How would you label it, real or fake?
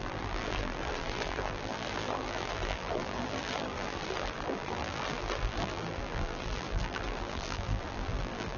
fake